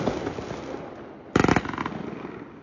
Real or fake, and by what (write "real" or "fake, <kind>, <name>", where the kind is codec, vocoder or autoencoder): real